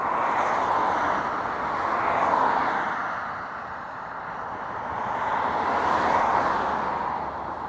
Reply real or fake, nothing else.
real